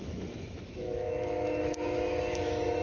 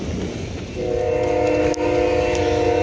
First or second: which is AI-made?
first